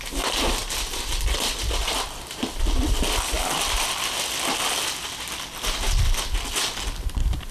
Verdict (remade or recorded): recorded